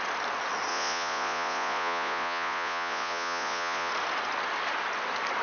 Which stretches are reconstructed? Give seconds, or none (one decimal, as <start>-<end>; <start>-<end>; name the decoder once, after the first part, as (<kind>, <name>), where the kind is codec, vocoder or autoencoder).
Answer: 0.7-3.9 (vocoder, Vocos)